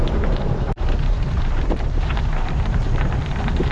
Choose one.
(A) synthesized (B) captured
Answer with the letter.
A